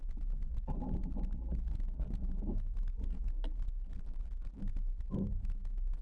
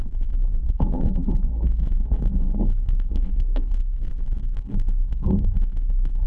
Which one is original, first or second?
first